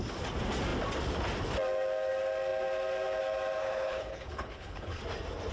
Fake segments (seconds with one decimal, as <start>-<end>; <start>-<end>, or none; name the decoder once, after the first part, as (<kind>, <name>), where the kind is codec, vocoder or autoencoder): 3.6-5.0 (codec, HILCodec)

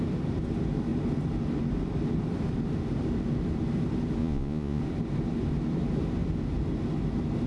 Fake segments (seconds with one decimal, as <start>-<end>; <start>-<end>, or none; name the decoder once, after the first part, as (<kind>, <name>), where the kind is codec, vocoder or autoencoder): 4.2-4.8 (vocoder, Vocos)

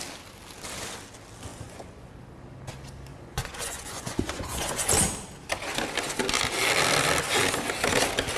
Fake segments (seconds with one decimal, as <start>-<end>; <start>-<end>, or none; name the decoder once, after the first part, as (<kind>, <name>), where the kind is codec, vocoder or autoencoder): 1.5-2.1 (vocoder, Vocos); 3.1-4.9

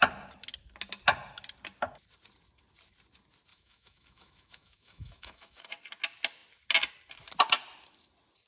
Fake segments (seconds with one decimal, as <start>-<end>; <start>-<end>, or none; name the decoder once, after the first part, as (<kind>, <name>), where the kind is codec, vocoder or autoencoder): 3.5-5.6 (autoencoder, DAC-VAE)

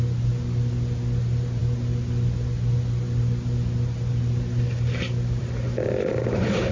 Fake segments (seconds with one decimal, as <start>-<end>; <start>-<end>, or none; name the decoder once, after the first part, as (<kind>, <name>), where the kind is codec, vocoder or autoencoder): none

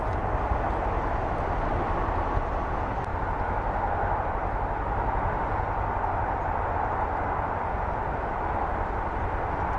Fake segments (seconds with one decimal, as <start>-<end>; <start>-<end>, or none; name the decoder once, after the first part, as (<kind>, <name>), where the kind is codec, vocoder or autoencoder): none

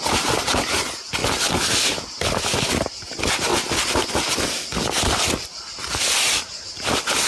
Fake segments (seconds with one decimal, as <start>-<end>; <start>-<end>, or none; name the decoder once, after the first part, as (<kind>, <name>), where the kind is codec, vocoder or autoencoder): none